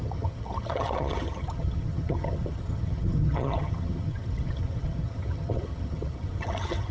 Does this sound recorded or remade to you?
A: remade